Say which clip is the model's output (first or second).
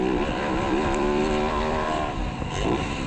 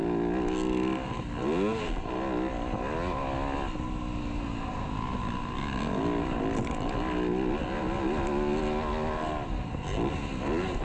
first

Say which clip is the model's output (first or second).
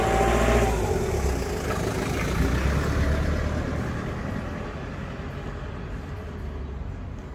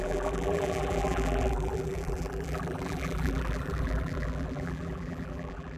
second